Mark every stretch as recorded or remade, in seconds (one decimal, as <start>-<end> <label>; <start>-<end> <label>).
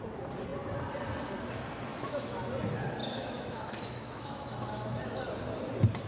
0.0-1.9 recorded; 1.9-2.4 remade; 2.4-3.0 recorded; 3.0-5.2 remade; 5.2-6.1 recorded